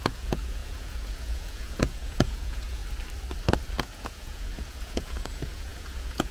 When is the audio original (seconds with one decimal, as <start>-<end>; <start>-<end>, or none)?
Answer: 2.8-3.7